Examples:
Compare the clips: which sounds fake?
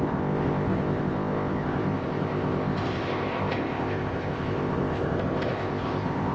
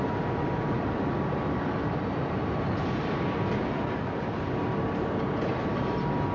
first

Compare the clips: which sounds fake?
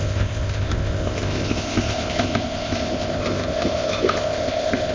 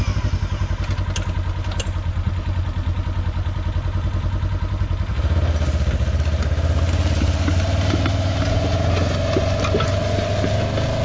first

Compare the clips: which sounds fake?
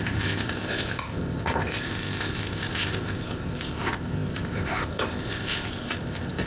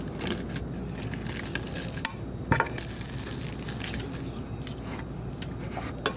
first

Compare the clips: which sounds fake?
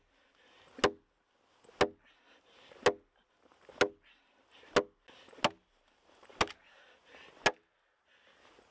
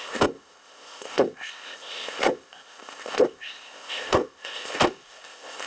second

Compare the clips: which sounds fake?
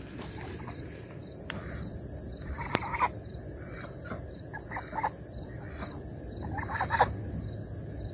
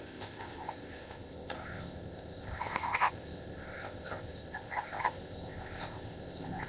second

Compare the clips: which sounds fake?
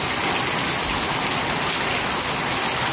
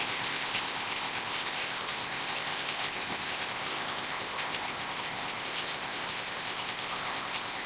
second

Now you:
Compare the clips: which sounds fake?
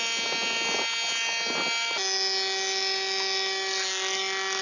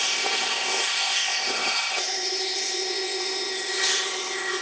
second